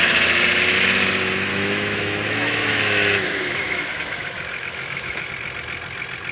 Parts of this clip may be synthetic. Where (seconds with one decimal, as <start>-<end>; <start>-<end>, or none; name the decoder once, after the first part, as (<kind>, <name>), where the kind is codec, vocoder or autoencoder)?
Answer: 1.5-5.3 (autoencoder, DAC-VAE)